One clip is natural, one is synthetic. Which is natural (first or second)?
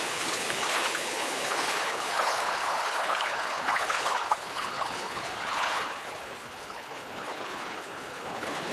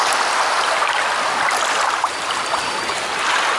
second